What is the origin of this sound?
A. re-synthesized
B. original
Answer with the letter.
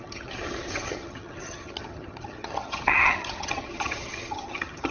A